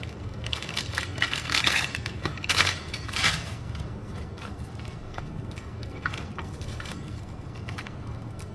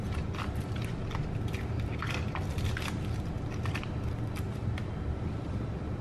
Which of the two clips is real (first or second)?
second